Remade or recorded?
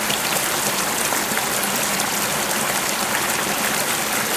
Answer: recorded